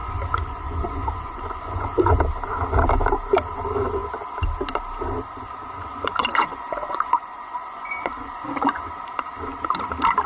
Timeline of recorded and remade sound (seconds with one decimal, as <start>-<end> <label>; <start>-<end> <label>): 0.0-2.2 remade; 2.2-5.6 recorded; 5.6-8.9 remade; 8.9-10.3 recorded